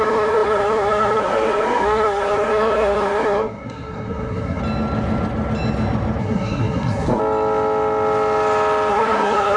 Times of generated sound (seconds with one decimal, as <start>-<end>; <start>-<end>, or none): 0.0-4.6; 6.2-7.2; 8.9-9.6